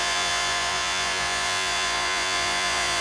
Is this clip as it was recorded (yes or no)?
no